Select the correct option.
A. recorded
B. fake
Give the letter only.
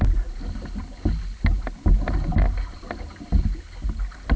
A